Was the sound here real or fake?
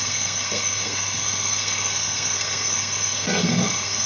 fake